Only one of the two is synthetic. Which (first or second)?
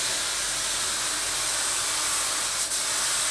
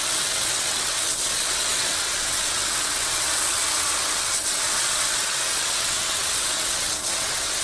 second